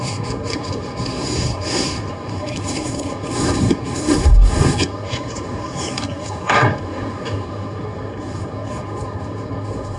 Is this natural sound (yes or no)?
no